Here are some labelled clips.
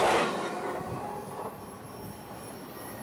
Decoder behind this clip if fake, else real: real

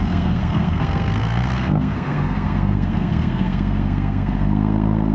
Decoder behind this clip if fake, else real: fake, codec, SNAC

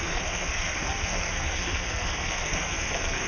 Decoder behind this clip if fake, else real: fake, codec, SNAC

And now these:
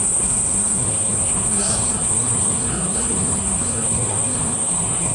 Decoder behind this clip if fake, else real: fake, codec, SNAC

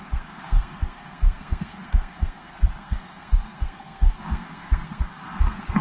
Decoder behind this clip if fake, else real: fake, codec, SNAC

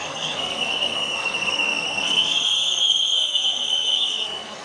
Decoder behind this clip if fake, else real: fake, codec, SNAC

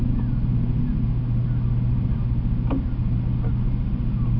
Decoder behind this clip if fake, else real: real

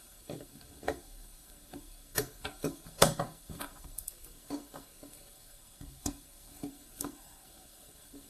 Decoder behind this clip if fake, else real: fake, codec, SNAC